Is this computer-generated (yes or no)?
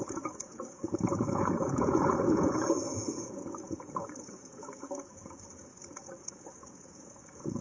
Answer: yes